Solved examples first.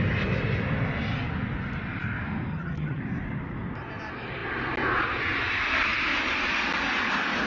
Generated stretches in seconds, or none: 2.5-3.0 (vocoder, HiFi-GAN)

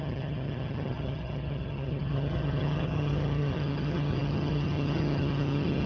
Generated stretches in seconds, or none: 0.0-5.9 (vocoder, HiFi-GAN)

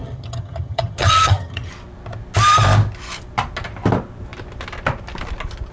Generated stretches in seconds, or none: 0.0-1.7 (vocoder, HiFi-GAN)

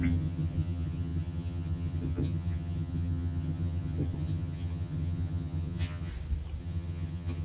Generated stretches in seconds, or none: 0.0-6.1 (vocoder, HiFi-GAN); 6.6-7.4

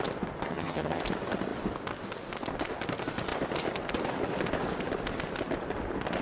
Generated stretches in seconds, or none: 0.5-1.0 (vocoder, HiFi-GAN)

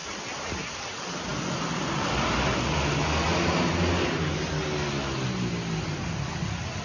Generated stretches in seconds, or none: none